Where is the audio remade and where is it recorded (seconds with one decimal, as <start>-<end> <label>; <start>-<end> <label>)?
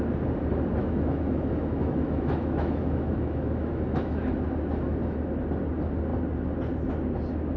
0.0-0.8 recorded; 0.8-4.3 remade; 4.3-7.6 recorded